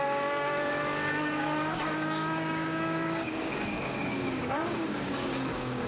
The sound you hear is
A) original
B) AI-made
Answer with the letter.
B